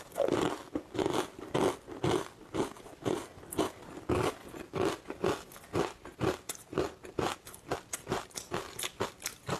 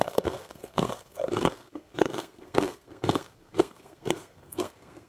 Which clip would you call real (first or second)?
first